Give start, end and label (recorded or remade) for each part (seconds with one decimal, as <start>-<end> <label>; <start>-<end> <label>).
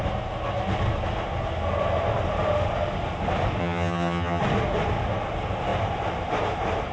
0.0-3.6 recorded; 3.6-4.4 remade; 4.4-6.9 recorded